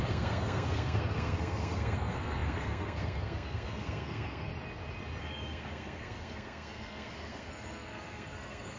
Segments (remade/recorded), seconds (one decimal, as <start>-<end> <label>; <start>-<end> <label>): 0.0-4.5 remade; 4.5-5.2 recorded; 5.2-8.8 remade

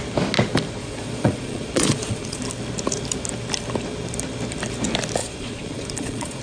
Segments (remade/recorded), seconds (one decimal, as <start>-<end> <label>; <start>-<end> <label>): 0.0-0.8 recorded; 0.8-2.4 remade; 2.4-5.2 recorded; 5.2-6.4 remade

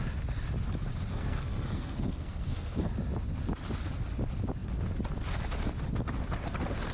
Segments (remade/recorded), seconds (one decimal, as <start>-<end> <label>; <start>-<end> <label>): 0.0-1.1 recorded; 1.1-2.9 remade; 2.9-6.9 recorded

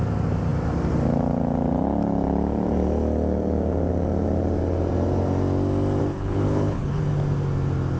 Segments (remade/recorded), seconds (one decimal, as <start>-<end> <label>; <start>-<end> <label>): 0.0-6.0 recorded; 6.0-7.0 remade; 7.0-8.0 recorded

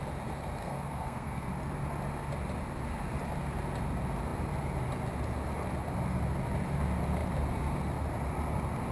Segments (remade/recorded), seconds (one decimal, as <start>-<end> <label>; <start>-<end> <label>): 0.0-0.6 recorded; 0.6-1.5 remade; 1.5-8.9 recorded

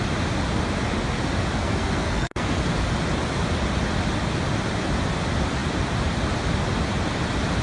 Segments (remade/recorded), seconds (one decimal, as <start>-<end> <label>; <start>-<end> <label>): 0.0-1.6 recorded; 1.6-2.6 remade; 2.6-7.6 recorded